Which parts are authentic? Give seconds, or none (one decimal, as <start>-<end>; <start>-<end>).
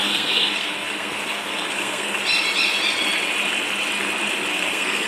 2.2-4.5